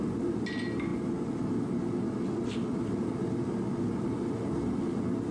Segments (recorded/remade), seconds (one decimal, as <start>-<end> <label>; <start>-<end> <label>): 0.0-5.3 recorded